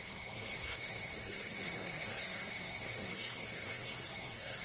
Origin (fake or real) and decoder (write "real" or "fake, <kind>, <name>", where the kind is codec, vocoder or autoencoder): fake, codec, SNAC